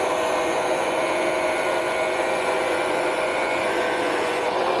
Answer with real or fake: fake